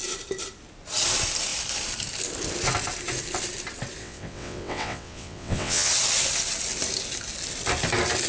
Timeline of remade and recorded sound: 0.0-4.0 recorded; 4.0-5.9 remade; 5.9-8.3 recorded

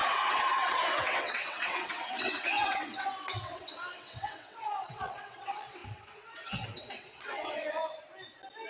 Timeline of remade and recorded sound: 0.0-7.8 remade; 7.8-8.7 recorded

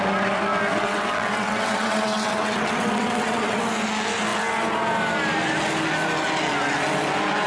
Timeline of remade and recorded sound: 0.0-0.8 recorded; 0.8-3.6 remade; 3.6-7.5 recorded

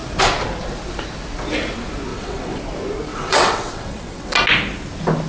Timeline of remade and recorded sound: 0.0-2.1 recorded; 2.1-2.6 remade; 2.6-3.1 recorded; 3.1-4.3 remade; 4.3-5.3 recorded